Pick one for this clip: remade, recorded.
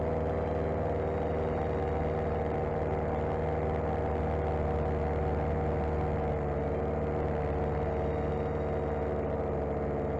recorded